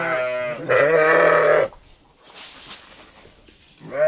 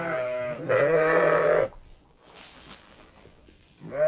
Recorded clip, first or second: first